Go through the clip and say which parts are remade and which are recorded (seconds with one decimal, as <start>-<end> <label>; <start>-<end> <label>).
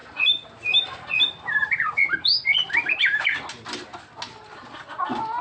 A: 0.0-5.4 recorded